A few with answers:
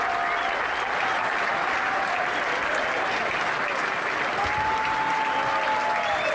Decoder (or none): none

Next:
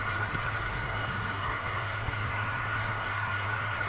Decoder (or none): codec, SNAC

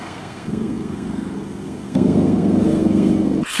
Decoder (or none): codec, SNAC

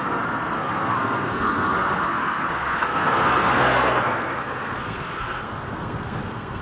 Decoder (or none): codec, SNAC